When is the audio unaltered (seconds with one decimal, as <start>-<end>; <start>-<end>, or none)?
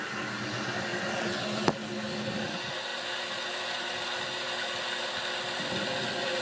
0.0-6.4